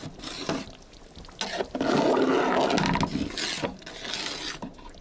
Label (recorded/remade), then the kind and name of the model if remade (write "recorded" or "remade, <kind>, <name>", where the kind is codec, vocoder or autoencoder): recorded